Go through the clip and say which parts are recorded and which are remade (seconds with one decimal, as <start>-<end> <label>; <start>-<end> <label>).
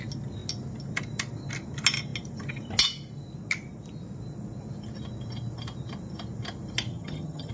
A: 0.0-6.9 recorded; 6.9-7.5 remade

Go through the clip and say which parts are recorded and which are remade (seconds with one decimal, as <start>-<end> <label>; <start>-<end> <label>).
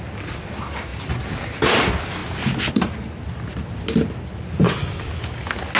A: 0.0-5.8 recorded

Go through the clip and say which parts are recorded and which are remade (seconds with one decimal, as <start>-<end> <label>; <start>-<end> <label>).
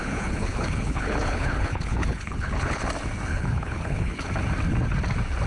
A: 0.0-2.9 remade; 2.9-3.3 recorded; 3.3-4.3 remade; 4.3-5.5 recorded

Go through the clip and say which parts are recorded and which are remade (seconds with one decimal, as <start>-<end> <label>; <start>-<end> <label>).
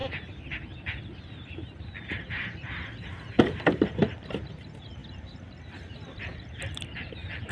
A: 0.0-4.5 remade; 4.5-5.0 recorded; 5.0-7.5 remade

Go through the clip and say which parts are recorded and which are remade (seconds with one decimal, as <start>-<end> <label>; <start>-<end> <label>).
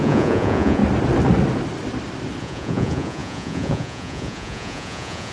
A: 0.0-0.8 remade; 0.8-2.4 recorded; 2.4-5.3 remade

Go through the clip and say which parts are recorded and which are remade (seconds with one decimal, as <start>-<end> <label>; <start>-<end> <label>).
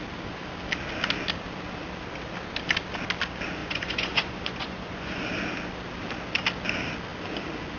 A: 0.0-3.6 recorded; 3.6-5.2 remade; 5.2-7.8 recorded